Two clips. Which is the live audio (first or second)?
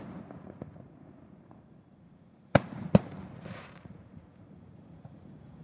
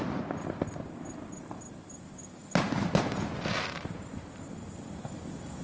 second